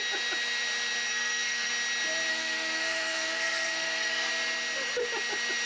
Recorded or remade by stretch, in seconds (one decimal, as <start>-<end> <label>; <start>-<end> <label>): 0.0-1.1 recorded; 1.1-1.7 remade; 1.7-2.3 recorded; 2.3-4.3 remade; 4.3-5.7 recorded